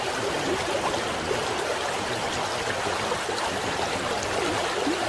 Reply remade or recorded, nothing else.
recorded